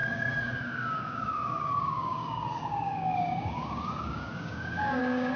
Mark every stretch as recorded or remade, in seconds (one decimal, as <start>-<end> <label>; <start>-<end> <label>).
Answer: 0.0-5.4 remade